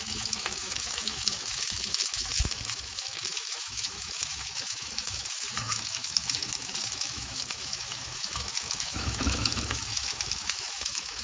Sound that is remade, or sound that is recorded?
remade